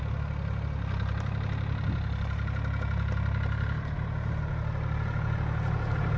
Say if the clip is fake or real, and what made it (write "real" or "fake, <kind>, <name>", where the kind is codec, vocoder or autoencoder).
real